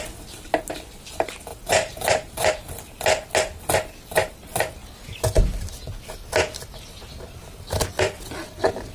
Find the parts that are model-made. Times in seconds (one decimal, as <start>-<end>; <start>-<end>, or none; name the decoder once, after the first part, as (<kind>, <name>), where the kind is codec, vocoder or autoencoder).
1.5-2.6 (vocoder, BigVGAN v2)